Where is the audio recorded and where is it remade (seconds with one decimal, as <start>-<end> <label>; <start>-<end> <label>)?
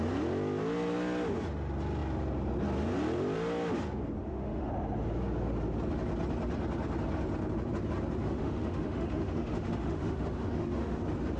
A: 0.0-4.2 recorded; 4.2-4.7 remade; 4.7-8.2 recorded; 8.2-11.0 remade; 11.0-11.4 recorded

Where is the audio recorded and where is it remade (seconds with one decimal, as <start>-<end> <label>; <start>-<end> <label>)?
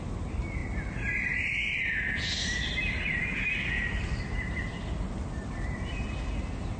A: 0.0-6.8 recorded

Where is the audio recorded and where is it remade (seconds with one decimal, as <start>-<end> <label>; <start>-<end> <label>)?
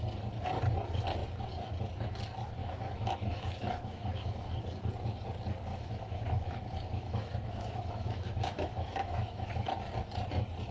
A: 0.0-2.6 recorded; 2.6-4.5 remade; 4.5-5.7 recorded; 5.7-9.5 remade; 9.5-10.7 recorded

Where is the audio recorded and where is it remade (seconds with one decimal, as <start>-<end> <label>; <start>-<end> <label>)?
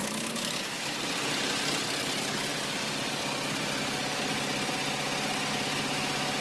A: 0.0-1.0 remade; 1.0-6.4 recorded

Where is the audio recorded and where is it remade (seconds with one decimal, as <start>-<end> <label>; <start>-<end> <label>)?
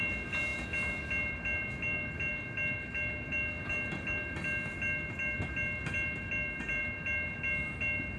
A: 0.0-8.2 recorded